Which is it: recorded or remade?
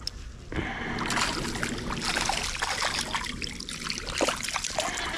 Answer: recorded